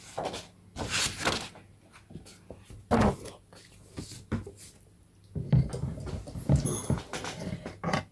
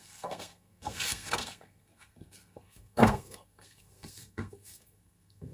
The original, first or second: first